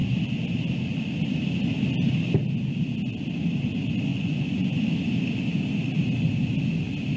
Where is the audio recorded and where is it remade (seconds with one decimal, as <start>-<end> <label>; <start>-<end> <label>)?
0.0-4.1 recorded; 4.1-4.8 remade; 4.8-7.2 recorded